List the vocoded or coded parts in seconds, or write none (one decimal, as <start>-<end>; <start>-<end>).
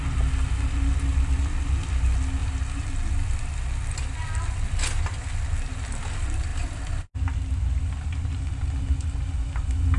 none